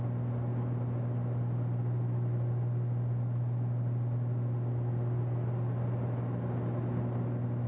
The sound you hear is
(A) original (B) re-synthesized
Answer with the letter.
A